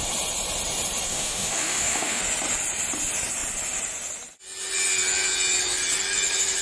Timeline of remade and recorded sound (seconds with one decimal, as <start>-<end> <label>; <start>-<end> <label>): 0.0-1.1 recorded; 1.1-2.2 remade; 2.2-6.6 recorded